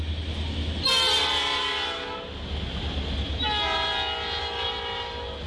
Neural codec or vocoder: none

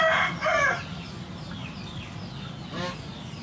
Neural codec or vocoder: none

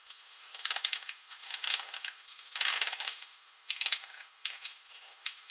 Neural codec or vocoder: autoencoder, DAC-VAE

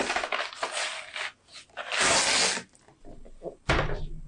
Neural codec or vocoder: none